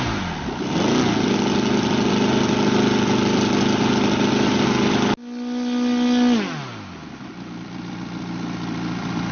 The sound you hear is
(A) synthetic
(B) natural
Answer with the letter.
B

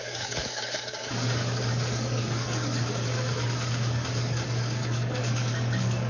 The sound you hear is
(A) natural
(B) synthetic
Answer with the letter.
B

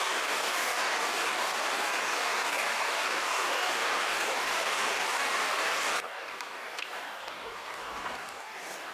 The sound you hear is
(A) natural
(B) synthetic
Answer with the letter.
B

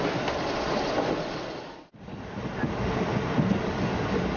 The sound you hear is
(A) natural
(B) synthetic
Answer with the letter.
A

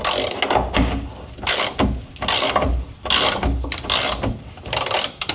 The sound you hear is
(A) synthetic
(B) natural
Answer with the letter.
B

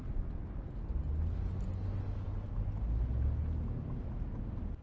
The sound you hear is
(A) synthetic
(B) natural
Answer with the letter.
B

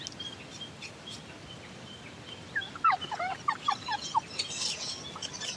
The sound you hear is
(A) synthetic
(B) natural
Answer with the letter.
B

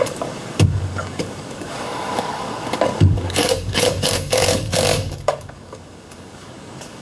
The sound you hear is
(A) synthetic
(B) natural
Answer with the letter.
A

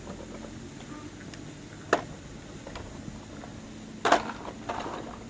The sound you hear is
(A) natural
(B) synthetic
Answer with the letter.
A